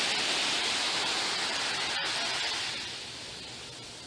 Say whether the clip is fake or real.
real